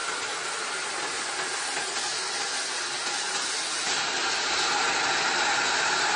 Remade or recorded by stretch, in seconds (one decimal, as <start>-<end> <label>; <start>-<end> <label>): 0.0-6.2 recorded